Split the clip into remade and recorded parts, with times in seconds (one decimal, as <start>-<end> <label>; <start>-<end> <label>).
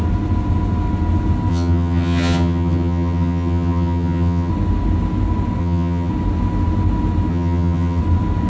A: 0.0-1.5 recorded; 1.5-4.5 remade; 4.5-5.6 recorded; 5.6-6.1 remade; 6.1-7.3 recorded; 7.3-8.0 remade; 8.0-8.5 recorded